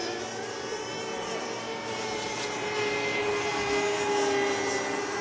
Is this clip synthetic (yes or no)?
no